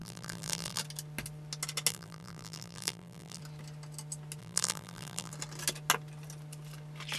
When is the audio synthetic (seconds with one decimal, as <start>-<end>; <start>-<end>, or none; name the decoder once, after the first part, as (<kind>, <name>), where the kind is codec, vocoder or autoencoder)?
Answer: 0.0-0.8 (vocoder, BigVGAN v2); 1.9-3.4; 4.4-5.3

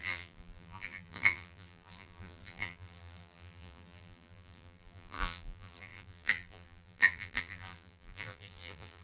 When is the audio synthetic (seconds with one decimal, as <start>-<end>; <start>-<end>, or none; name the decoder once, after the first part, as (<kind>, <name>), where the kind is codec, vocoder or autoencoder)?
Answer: 0.0-9.0 (vocoder, BigVGAN v2)

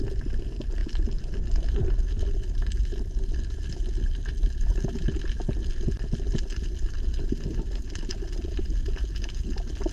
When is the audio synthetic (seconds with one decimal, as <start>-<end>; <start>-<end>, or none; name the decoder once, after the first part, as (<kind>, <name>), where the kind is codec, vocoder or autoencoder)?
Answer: none

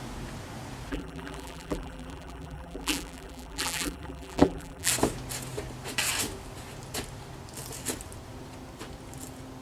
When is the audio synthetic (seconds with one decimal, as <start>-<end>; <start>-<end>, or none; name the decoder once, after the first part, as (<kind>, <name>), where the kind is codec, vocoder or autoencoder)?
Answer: 0.9-4.9 (vocoder, BigVGAN v2)

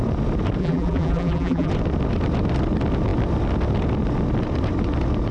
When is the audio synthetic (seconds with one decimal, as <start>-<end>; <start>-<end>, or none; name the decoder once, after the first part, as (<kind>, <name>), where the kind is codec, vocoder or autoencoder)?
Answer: 0.6-1.7 (vocoder, BigVGAN v2)

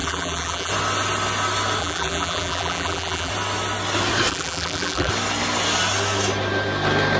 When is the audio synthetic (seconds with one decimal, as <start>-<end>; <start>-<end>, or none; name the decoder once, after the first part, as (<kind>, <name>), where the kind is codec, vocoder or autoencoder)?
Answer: 0.0-0.7 (vocoder, BigVGAN v2); 1.8-3.3; 4.3-5.1